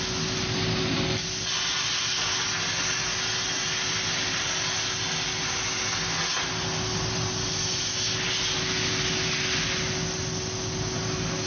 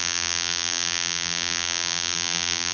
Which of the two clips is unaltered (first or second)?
first